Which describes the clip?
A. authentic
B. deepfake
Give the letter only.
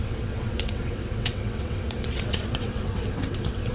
B